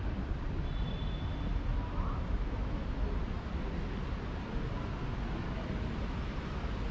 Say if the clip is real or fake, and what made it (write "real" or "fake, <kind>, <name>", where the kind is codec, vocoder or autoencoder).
real